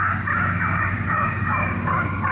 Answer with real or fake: fake